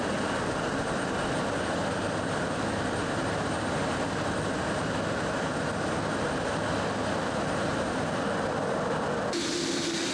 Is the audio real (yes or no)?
yes